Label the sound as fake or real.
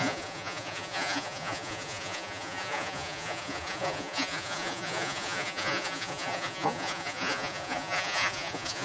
fake